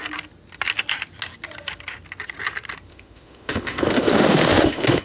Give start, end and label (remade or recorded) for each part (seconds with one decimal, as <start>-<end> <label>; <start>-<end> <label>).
0.0-2.9 recorded; 2.9-5.0 remade